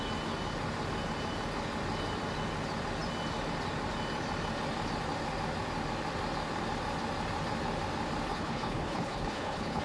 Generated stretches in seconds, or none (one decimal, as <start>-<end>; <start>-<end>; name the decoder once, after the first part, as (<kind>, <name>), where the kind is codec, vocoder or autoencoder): 8.3-9.8 (codec, HILCodec)